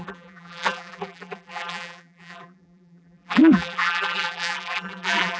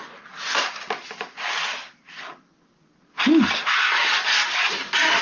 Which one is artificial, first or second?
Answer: first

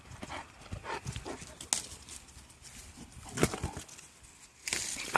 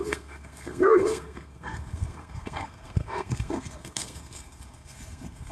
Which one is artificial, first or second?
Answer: second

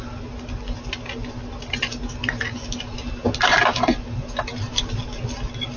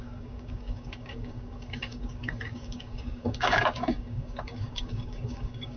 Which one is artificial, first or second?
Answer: second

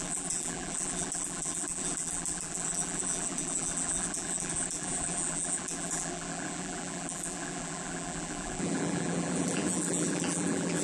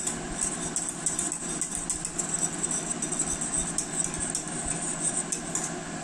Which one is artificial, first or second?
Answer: first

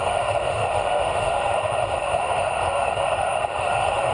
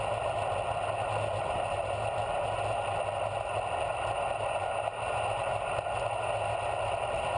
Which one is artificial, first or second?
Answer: first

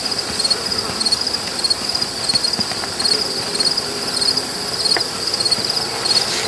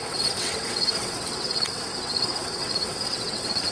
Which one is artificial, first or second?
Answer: second